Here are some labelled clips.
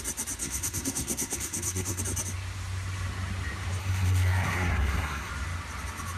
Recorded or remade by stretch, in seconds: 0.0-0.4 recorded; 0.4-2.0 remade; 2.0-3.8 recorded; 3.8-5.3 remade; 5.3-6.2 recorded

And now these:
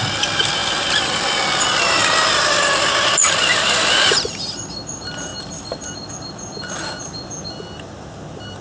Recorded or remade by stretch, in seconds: 0.0-2.0 recorded; 2.0-4.4 remade; 4.4-8.6 recorded

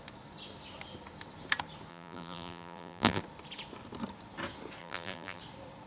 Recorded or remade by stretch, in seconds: 0.0-1.9 recorded; 1.9-3.2 remade; 3.2-4.8 recorded; 4.8-5.4 remade; 5.4-5.9 recorded

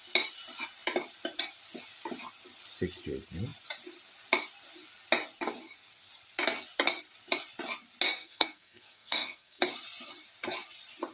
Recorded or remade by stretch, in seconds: 0.0-8.2 recorded; 8.2-9.6 remade; 9.6-11.1 recorded